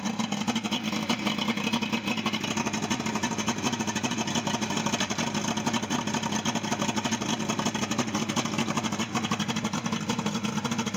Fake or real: real